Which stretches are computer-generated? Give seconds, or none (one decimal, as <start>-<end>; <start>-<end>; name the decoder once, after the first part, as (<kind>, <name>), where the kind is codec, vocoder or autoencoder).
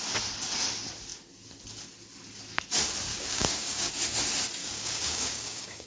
3.1-3.9 (codec, DAC); 4.6-5.9